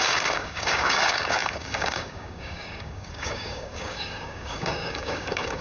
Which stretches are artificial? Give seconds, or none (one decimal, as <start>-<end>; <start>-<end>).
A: 0.0-5.6